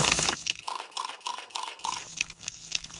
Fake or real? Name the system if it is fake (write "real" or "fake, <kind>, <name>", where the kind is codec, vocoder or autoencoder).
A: fake, codec, SNAC